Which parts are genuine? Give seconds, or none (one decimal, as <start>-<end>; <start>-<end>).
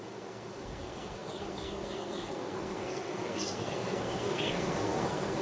none